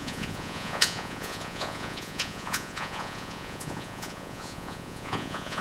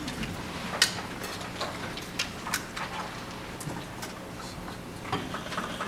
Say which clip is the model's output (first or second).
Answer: first